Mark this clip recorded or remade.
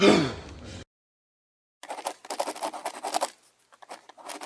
recorded